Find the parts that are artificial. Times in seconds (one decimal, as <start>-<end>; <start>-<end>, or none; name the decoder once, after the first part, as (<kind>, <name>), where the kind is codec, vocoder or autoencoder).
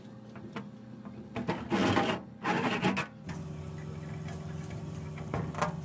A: none